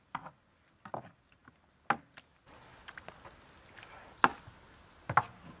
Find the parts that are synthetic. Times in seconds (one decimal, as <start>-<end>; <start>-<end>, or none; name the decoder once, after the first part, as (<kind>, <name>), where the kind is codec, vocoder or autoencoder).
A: none